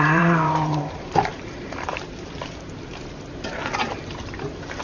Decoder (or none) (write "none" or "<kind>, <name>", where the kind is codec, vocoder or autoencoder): vocoder, BigVGAN v2